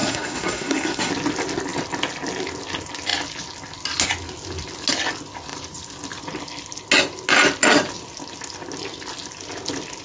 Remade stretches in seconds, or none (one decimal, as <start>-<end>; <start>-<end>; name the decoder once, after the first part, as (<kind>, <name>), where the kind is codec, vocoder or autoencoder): 0.0-1.1 (codec, SNAC)